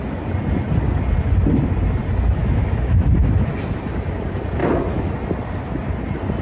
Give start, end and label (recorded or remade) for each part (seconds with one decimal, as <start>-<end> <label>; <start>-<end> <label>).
0.0-2.4 recorded; 2.4-3.5 remade; 3.5-4.6 recorded; 4.6-5.1 remade; 5.1-6.4 recorded